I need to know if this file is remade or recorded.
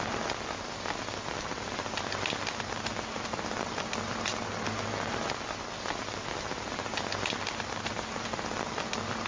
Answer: recorded